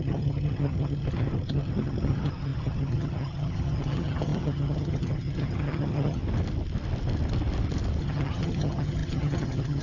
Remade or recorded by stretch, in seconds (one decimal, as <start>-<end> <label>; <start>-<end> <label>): 0.0-6.2 remade; 6.2-8.0 recorded; 8.0-9.8 remade